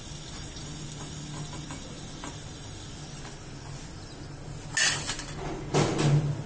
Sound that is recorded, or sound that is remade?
recorded